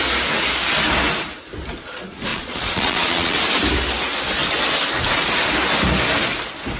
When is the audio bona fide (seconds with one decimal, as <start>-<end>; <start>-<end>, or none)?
0.0-2.3; 3.4-6.8